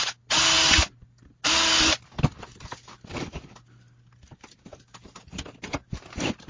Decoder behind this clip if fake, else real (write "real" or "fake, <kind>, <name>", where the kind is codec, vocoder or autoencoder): real